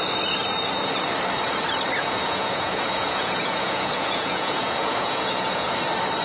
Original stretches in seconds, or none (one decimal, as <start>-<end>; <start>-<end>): 0.0-2.0; 5.7-6.2